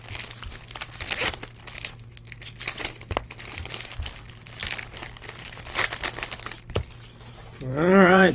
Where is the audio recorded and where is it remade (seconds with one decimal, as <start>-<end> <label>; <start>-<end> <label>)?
0.0-7.7 recorded; 7.7-8.3 remade